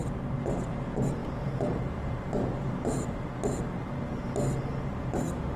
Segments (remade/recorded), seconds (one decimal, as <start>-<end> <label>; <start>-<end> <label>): 0.0-0.6 recorded; 0.6-3.3 remade; 3.3-5.6 recorded